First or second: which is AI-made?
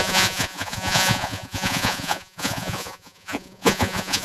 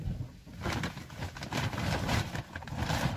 first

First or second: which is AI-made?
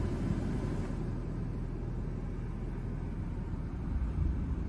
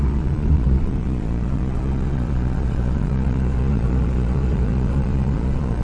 second